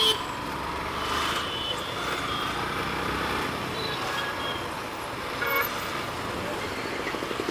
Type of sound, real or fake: real